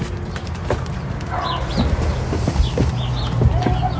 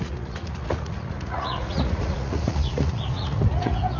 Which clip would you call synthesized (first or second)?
second